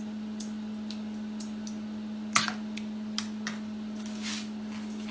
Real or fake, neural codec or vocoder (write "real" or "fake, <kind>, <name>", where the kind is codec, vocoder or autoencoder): real